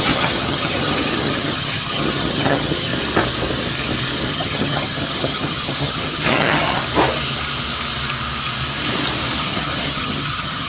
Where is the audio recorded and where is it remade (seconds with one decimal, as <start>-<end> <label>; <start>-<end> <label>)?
0.0-2.9 remade; 2.9-4.3 recorded; 4.3-6.8 remade; 6.8-9.4 recorded; 9.4-10.7 remade